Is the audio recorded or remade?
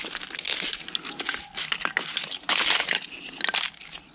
recorded